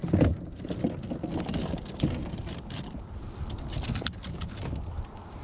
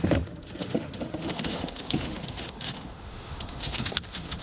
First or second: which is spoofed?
second